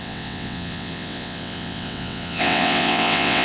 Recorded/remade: remade